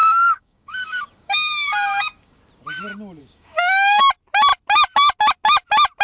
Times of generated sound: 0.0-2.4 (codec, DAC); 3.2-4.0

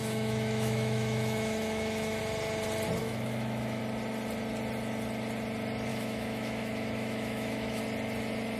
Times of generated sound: 0.0-2.2 (autoencoder, DAC-VAE); 3.0-3.8; 5.9-7.8

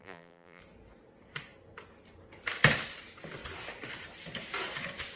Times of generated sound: 0.0-0.6 (vocoder, BigVGAN v2)

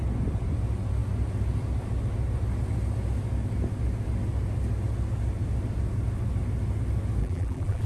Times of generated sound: 7.2-7.9 (vocoder, BigVGAN v2)